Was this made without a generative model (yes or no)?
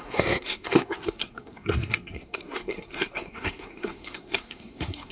no